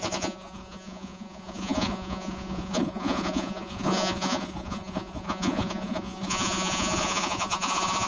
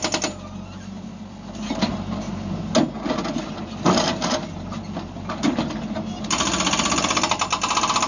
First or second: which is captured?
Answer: second